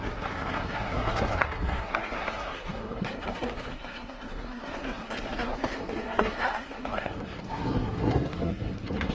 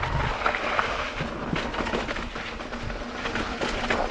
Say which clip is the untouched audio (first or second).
second